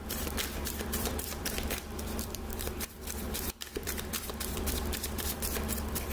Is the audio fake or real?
fake